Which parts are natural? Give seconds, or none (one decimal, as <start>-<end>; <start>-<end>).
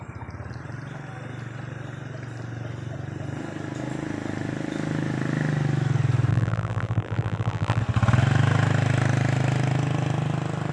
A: 0.0-6.3; 7.8-10.7